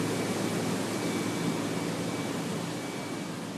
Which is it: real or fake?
real